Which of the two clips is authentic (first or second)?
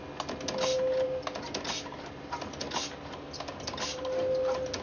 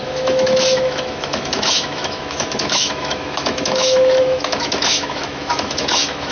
first